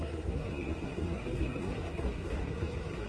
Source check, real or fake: fake